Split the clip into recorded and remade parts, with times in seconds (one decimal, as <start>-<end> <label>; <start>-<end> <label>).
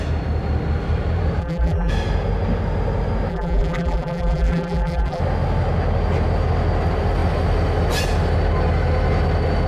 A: 0.0-1.4 recorded; 1.4-1.9 remade; 1.9-3.3 recorded; 3.3-5.2 remade; 5.2-9.7 recorded